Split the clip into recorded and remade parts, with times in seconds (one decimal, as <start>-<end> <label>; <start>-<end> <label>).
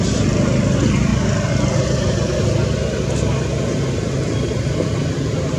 0.0-1.1 remade; 1.1-4.5 recorded; 4.5-5.6 remade